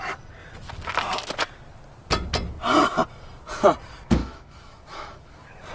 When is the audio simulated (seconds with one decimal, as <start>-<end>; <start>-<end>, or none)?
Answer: 4.2-5.7